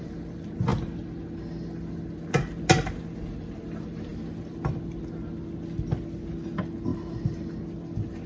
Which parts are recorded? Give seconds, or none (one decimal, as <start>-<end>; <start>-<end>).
0.0-8.3